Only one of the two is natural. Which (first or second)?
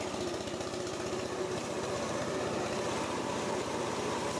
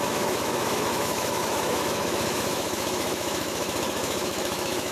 first